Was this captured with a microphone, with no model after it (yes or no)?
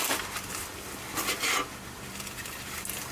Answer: no